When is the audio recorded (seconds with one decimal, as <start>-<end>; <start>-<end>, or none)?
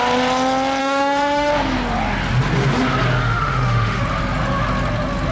0.0-0.8; 1.5-3.2; 4.0-5.3